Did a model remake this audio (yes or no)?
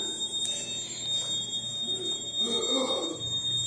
no